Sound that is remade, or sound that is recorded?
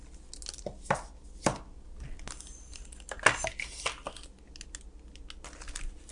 recorded